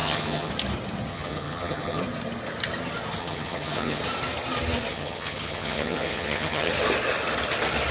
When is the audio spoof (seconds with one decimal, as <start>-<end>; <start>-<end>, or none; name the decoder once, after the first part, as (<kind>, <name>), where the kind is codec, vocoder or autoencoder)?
0.0-0.5 (vocoder, HiFi-GAN); 1.1-2.0; 3.2-4.0; 4.9-6.7